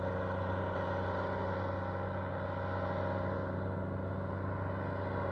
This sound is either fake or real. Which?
real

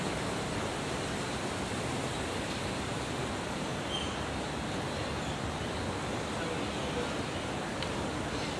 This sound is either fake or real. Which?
real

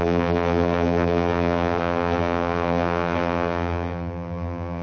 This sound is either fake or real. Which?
fake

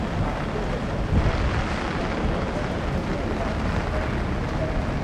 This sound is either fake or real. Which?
real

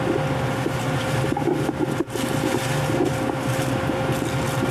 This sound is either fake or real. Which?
real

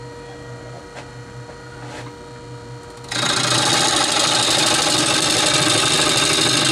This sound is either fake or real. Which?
real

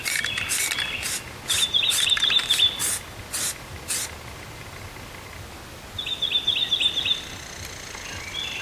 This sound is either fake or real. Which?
real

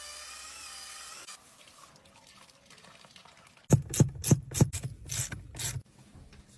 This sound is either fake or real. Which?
real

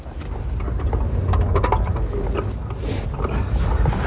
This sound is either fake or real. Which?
real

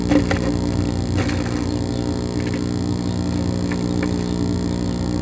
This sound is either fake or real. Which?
real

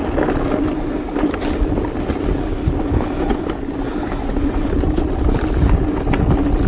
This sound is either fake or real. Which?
real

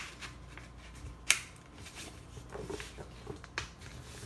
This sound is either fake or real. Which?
real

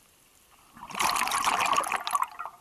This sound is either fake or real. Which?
fake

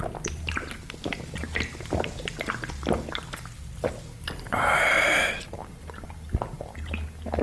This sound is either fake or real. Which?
real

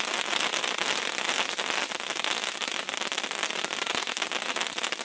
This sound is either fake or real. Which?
real